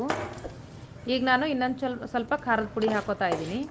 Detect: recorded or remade recorded